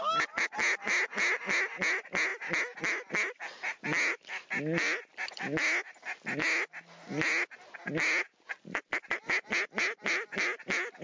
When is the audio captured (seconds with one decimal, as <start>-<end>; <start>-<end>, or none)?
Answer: 0.0-11.0